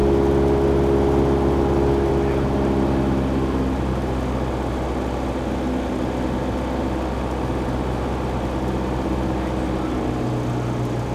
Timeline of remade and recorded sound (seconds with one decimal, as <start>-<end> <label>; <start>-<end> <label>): 0.0-11.1 recorded